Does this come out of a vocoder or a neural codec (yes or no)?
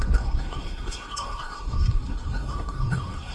yes